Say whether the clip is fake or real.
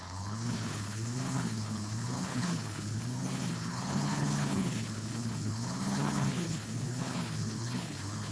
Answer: fake